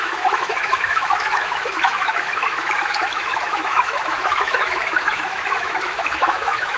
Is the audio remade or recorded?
remade